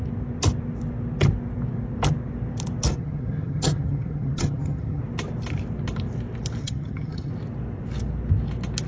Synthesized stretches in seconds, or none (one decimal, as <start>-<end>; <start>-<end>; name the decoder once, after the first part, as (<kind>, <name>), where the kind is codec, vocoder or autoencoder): 2.9-5.0 (vocoder, HiFi-GAN); 6.6-7.3